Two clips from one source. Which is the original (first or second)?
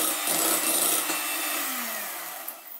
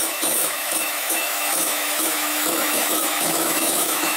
first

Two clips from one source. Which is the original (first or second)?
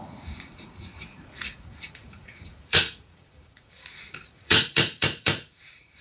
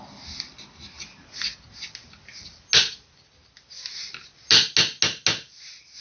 second